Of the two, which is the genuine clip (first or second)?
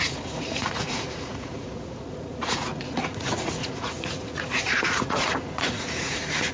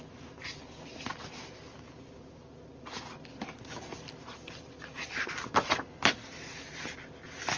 second